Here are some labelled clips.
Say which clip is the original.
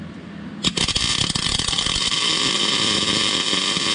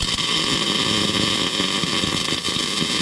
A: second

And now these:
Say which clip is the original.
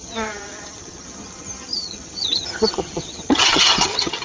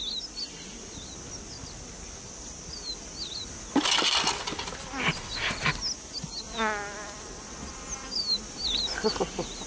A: second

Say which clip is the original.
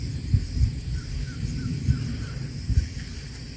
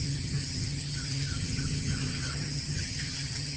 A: first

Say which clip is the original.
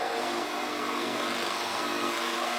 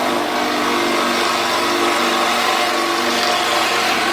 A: second